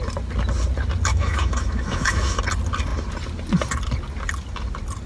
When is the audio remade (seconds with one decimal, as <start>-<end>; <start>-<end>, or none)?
1.1-2.4